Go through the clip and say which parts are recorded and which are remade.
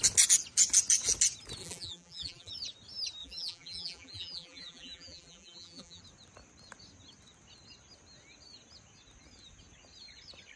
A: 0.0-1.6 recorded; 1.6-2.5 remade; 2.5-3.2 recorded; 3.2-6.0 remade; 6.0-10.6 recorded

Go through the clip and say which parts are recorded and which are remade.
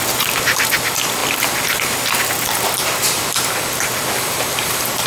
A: 0.0-2.8 recorded; 2.8-3.5 remade; 3.5-5.1 recorded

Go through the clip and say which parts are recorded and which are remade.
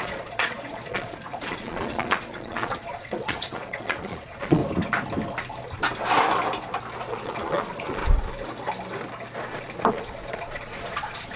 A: 0.0-4.6 remade; 4.6-7.0 recorded; 7.0-8.0 remade; 8.0-9.9 recorded; 9.9-11.4 remade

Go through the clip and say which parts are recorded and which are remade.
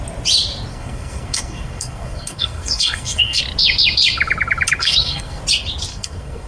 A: 0.0-0.7 recorded; 0.7-3.4 remade; 3.4-4.8 recorded; 4.8-5.4 remade; 5.4-5.9 recorded; 5.9-6.5 remade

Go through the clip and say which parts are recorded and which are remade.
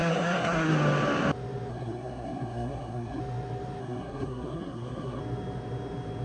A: 0.0-0.7 remade; 0.7-1.7 recorded; 1.7-3.2 remade; 3.2-3.8 recorded; 3.8-5.2 remade; 5.2-6.2 recorded